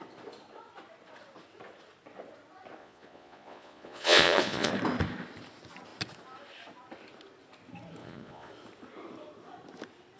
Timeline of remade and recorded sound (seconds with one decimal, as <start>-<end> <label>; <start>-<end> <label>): 0.0-2.8 recorded; 2.8-4.7 remade; 4.7-8.0 recorded; 8.0-8.5 remade; 8.5-10.2 recorded